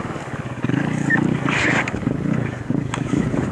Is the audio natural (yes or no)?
no